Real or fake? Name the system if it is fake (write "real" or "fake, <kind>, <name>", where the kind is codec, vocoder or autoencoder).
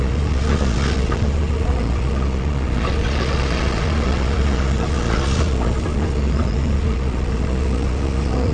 fake, vocoder, Vocos